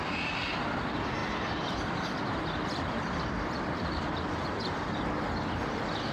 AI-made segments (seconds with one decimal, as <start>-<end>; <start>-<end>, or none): 1.2-4.6